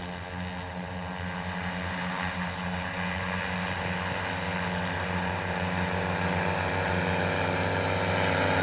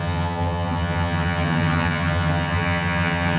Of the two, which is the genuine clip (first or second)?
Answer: first